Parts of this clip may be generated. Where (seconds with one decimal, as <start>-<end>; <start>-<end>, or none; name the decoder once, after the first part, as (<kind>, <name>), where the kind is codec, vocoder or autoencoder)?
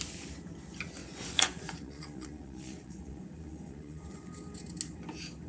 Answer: 1.0-4.3 (vocoder, Vocos)